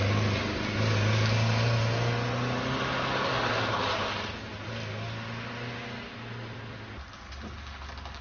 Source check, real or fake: real